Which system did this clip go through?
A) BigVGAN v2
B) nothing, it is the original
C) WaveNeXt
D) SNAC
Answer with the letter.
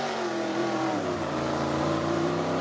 A